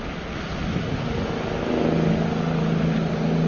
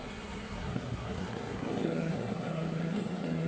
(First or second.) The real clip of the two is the first